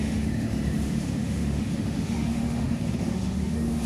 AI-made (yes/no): yes